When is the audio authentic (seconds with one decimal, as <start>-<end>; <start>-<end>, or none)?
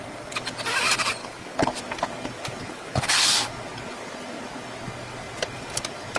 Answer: 0.0-1.2; 1.7-2.6; 3.3-6.2